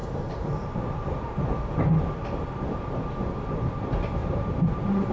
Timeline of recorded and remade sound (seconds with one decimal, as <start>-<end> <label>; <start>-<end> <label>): 0.0-3.1 remade; 3.1-4.2 recorded; 4.2-5.1 remade